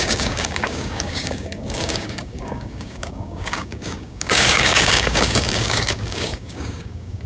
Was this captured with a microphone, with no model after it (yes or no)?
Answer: no